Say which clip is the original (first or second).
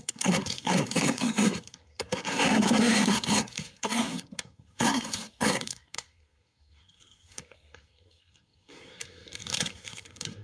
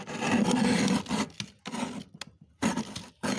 second